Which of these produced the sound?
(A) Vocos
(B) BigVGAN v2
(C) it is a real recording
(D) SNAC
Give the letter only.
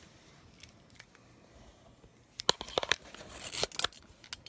C